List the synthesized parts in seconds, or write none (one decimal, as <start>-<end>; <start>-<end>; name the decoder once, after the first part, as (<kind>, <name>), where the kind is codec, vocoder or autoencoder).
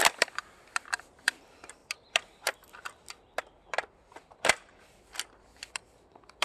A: 0.0-1.8 (vocoder, BigVGAN v2); 4.8-6.4